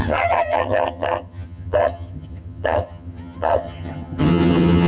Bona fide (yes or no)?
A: no